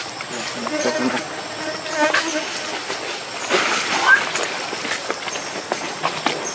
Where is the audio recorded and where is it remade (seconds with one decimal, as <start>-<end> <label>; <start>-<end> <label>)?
0.0-2.3 recorded; 2.3-5.9 remade; 5.9-6.5 recorded